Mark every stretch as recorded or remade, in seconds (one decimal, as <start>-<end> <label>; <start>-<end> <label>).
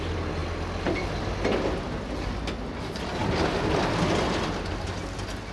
0.0-5.5 recorded